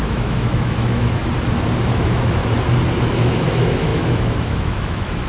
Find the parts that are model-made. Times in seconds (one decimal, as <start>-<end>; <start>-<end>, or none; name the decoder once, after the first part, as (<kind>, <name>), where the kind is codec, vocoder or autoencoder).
0.0-1.2 (autoencoder, DAC-VAE); 1.9-2.4; 3.0-5.3